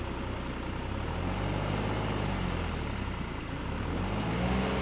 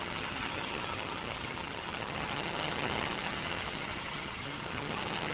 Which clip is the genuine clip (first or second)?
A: first